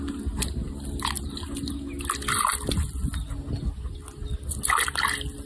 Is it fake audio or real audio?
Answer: real